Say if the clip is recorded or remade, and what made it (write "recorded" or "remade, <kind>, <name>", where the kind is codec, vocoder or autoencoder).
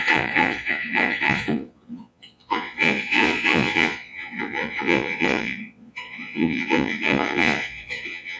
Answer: remade, vocoder, Vocos